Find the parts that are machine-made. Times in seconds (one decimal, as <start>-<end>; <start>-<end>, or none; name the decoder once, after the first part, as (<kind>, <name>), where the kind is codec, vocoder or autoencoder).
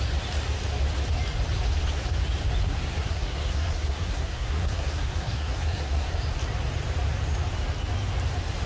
2.6-6.2 (codec, SNAC)